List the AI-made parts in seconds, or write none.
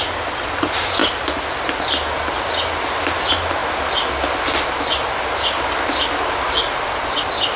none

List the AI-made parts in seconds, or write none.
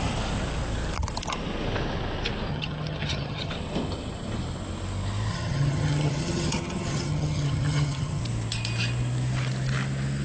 2.5-3.5 (vocoder, HiFi-GAN); 5.3-8.2